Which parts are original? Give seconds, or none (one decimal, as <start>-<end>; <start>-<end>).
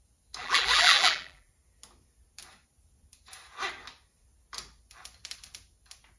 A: 0.0-0.4; 1.5-6.2